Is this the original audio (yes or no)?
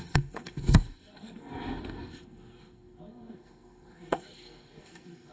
no